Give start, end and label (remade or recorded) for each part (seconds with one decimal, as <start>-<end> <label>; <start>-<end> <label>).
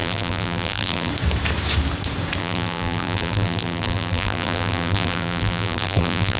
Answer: 0.0-1.1 remade; 1.1-2.4 recorded; 2.4-6.4 remade